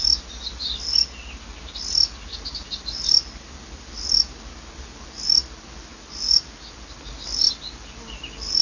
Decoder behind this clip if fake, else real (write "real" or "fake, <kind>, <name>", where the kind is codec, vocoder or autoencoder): real